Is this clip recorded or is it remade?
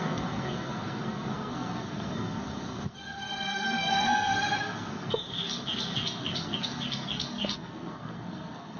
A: remade